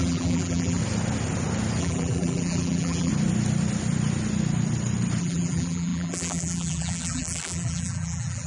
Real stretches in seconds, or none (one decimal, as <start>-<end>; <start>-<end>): 0.8-1.8; 3.1-5.2